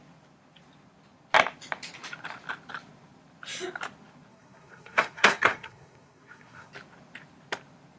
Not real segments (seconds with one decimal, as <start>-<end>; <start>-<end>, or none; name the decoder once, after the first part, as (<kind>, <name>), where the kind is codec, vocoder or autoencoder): 4.3-6.7 (codec, SNAC)